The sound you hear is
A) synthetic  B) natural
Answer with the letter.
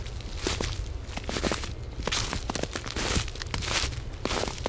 B